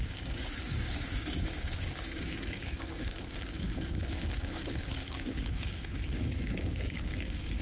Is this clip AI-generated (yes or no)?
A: yes